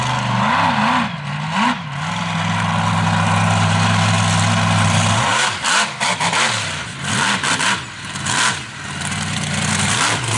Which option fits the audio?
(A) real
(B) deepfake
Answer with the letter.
A